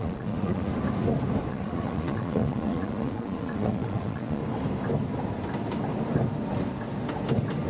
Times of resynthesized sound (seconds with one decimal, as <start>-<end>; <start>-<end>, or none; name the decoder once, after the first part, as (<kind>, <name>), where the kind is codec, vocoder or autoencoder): 0.0-0.7 (vocoder, Vocos); 1.5-4.4